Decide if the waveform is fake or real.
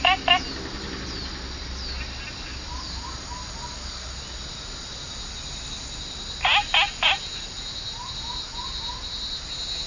real